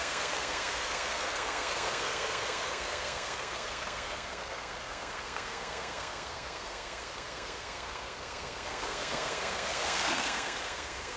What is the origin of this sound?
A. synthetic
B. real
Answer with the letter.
A